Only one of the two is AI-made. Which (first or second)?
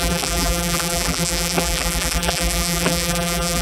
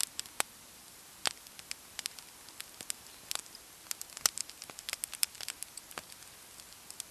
first